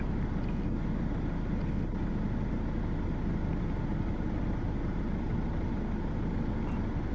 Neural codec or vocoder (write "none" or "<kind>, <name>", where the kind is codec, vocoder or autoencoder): none